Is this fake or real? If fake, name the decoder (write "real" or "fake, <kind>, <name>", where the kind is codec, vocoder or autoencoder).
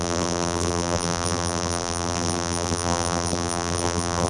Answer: fake, vocoder, BigVGAN v2